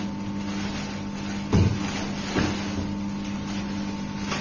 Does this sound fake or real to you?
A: real